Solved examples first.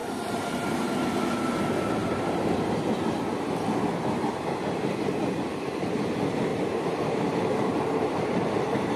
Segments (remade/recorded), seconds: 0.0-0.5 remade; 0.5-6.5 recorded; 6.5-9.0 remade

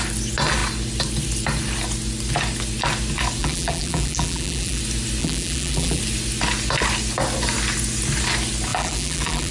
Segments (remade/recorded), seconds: 0.0-3.4 recorded; 3.4-4.8 remade; 4.8-5.2 recorded; 5.2-6.0 remade; 6.0-8.7 recorded; 8.7-9.5 remade

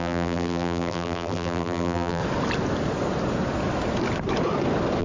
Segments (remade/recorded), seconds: 0.0-2.2 remade; 2.2-5.0 recorded